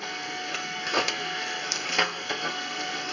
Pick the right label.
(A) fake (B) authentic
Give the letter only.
A